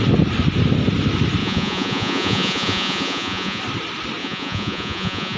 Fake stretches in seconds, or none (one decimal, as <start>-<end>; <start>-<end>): 1.4-3.6; 4.2-5.4